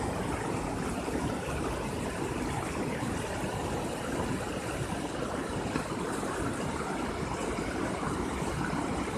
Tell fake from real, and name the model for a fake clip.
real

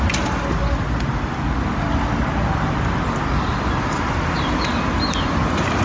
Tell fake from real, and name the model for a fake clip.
real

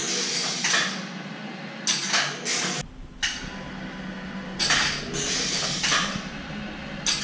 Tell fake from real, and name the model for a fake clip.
real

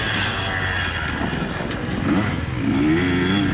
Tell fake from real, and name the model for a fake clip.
real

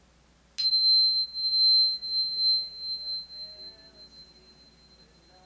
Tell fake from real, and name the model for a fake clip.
real